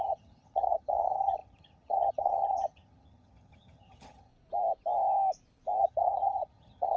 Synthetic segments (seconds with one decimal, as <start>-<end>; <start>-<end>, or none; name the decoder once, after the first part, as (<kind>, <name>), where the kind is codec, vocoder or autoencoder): 0.0-4.3 (vocoder, HiFi-GAN); 5.8-7.0